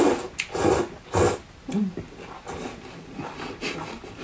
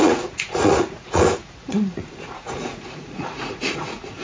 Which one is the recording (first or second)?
first